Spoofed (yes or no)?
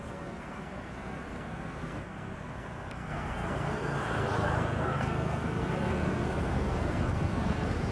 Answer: yes